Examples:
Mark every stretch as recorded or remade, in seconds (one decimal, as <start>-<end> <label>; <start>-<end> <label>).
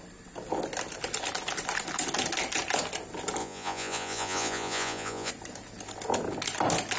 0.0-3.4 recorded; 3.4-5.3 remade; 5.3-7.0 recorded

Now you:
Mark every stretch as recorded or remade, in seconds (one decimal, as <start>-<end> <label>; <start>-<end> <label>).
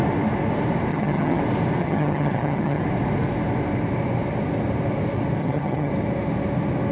0.0-0.9 recorded; 0.9-1.4 remade; 1.4-1.8 recorded; 1.8-2.8 remade; 2.8-5.4 recorded; 5.4-5.9 remade; 5.9-6.9 recorded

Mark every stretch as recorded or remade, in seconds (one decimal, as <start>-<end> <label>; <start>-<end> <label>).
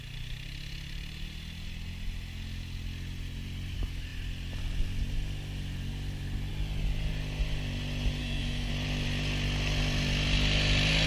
0.0-8.2 recorded; 8.2-8.7 remade; 8.7-11.1 recorded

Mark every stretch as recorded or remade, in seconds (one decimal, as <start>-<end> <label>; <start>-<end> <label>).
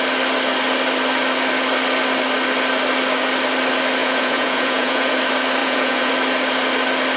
0.0-4.0 recorded; 4.0-5.1 remade; 5.1-5.6 recorded; 5.6-6.1 remade; 6.1-7.2 recorded